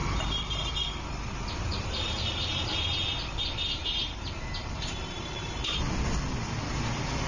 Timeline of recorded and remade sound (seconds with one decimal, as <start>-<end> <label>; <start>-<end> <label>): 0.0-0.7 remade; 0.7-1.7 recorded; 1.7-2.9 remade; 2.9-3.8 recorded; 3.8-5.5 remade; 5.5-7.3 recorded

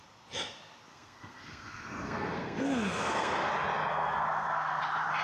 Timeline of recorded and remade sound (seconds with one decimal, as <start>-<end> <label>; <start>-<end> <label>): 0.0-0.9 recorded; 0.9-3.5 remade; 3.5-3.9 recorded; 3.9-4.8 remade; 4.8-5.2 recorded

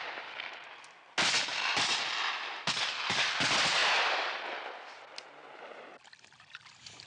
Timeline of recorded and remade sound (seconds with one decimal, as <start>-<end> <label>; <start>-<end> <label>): 0.0-7.1 recorded

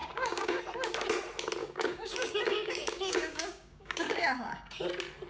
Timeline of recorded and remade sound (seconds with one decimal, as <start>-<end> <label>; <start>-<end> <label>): 0.0-0.6 remade; 0.6-1.6 recorded; 1.6-4.8 remade; 4.8-5.3 recorded

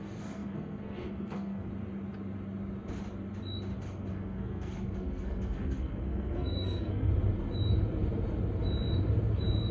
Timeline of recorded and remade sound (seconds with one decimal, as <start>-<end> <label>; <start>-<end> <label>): 0.0-1.7 remade; 1.7-3.8 recorded; 3.8-7.1 remade; 7.1-9.7 recorded

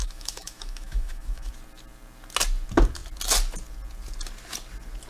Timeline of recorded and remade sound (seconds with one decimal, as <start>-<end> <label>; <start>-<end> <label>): 0.0-1.5 remade; 1.5-5.1 recorded